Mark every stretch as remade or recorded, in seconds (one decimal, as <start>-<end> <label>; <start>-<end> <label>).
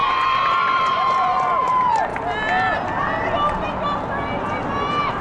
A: 0.0-1.7 remade; 1.7-5.2 recorded